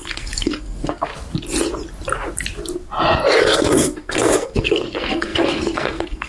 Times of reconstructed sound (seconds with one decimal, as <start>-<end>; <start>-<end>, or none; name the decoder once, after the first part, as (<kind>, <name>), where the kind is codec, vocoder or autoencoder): 0.0-1.1 (codec, SNAC); 3.4-6.3